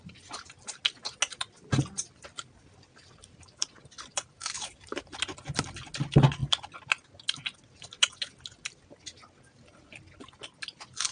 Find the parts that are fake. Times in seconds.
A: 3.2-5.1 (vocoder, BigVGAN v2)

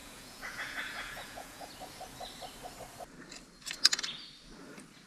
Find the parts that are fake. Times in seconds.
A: 0.0-1.7 (vocoder, Vocos)